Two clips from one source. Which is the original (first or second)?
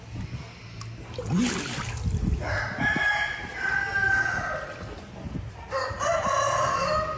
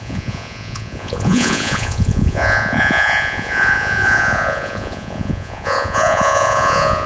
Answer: first